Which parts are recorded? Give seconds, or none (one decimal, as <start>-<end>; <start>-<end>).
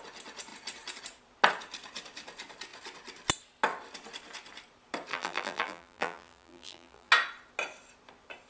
0.0-5.1; 7.1-8.5